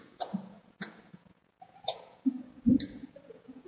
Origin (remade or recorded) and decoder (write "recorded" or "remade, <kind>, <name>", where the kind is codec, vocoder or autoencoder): remade, vocoder, Vocos